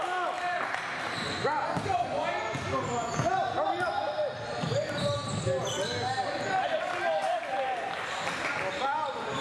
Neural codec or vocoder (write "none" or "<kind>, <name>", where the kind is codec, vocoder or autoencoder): none